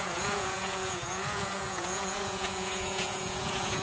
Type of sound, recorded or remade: remade